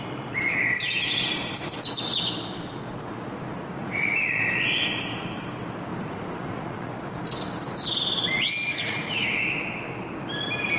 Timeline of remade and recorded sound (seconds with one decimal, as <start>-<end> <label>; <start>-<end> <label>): 0.0-3.8 recorded; 3.8-4.4 remade; 4.4-5.9 recorded; 5.9-6.9 remade; 6.9-8.7 recorded; 8.7-9.5 remade; 9.5-10.8 recorded